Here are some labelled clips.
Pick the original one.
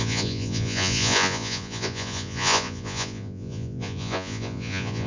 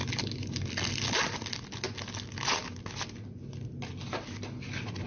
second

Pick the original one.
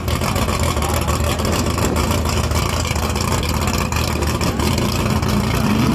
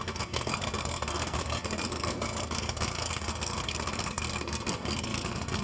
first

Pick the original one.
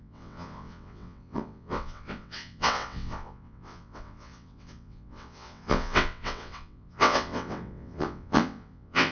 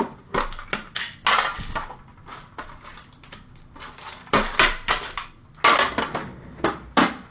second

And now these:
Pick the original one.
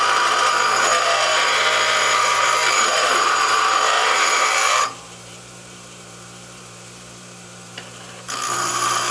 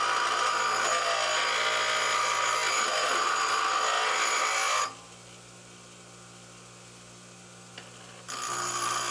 second